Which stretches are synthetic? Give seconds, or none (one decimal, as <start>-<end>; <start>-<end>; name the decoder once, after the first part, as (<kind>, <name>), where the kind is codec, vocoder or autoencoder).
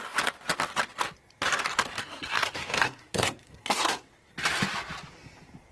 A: 2.0-4.3 (codec, SNAC)